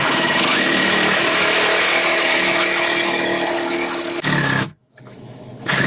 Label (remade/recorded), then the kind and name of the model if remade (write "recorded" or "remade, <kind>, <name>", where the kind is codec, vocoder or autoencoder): remade, autoencoder, DAC-VAE